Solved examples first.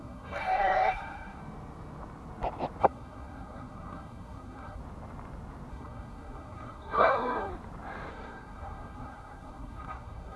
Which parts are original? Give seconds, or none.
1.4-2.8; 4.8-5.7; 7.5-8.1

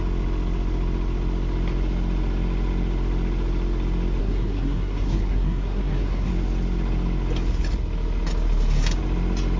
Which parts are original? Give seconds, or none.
0.0-4.2; 6.3-9.6